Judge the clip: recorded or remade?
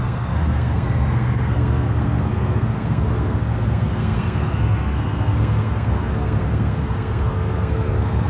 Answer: remade